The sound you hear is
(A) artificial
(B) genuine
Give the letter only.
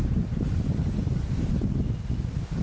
B